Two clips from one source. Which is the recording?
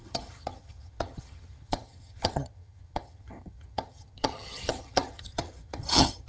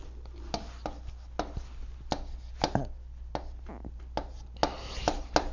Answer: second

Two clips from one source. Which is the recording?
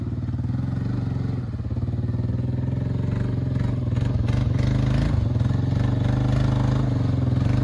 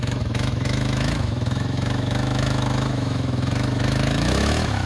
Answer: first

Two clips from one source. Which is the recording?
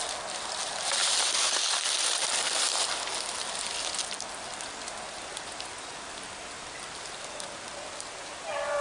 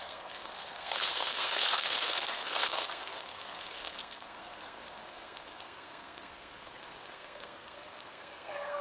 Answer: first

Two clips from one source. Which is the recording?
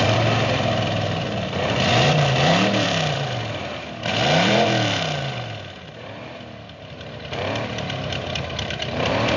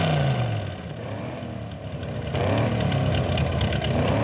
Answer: second